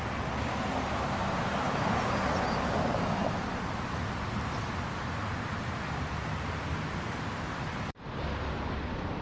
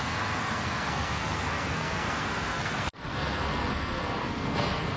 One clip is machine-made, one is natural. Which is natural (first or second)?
first